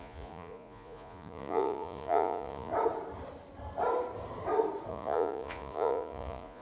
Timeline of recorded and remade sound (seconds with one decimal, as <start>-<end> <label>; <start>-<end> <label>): 0.0-2.7 remade; 2.7-4.9 recorded; 4.9-6.6 remade